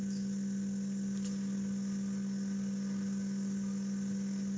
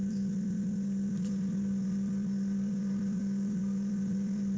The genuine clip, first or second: first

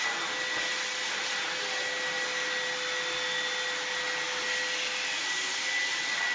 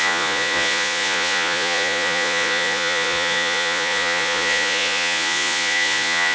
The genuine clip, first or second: first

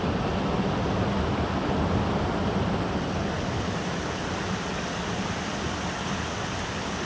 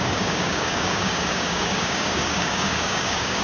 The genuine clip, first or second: first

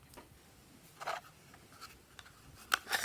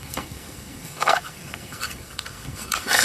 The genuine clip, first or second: first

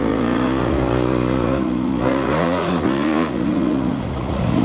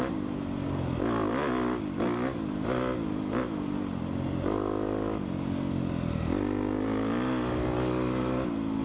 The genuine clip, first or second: second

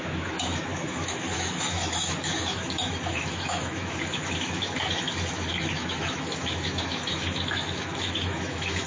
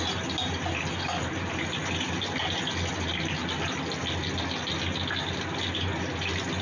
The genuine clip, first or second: second